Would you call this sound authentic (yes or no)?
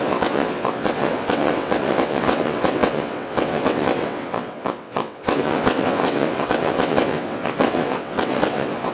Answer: no